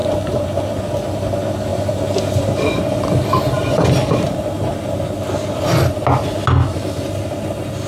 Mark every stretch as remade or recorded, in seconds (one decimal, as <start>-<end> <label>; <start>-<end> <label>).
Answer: 0.0-1.0 remade; 1.0-4.0 recorded; 4.0-4.7 remade; 4.7-7.9 recorded

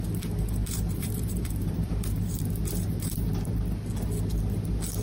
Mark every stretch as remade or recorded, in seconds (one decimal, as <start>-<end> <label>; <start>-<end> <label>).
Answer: 0.0-0.6 recorded; 0.6-3.6 remade; 3.6-5.0 recorded